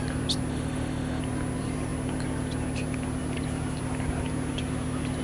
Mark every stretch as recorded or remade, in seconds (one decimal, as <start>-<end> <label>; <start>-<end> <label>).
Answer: 0.0-0.5 recorded; 0.5-1.2 remade; 1.2-5.2 recorded